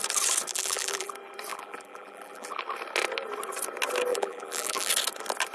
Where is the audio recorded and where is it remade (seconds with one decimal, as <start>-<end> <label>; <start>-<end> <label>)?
0.0-0.5 recorded; 0.5-1.1 remade; 1.1-1.5 recorded; 1.5-2.6 remade; 2.6-4.1 recorded; 4.1-4.9 remade; 4.9-5.5 recorded

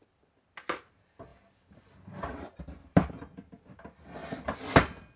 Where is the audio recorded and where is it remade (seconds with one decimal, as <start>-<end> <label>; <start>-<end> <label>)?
0.0-1.3 recorded; 1.3-3.1 remade; 3.1-4.2 recorded; 4.2-4.7 remade; 4.7-5.2 recorded

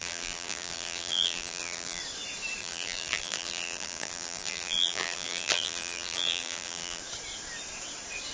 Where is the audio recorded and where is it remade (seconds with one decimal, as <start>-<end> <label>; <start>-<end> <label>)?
0.0-2.0 remade; 2.0-2.6 recorded; 2.6-7.0 remade; 7.0-8.3 recorded